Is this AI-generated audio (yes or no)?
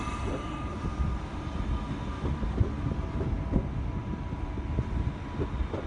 no